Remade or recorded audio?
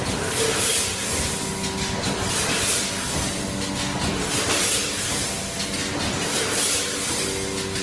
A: recorded